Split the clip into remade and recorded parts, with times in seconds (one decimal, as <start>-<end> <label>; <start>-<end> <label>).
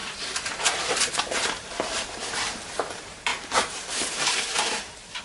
0.0-5.2 remade